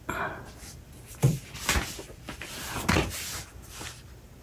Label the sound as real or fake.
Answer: real